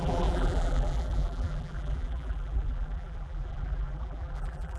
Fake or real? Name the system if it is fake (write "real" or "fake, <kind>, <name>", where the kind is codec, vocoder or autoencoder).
fake, vocoder, BigVGAN v2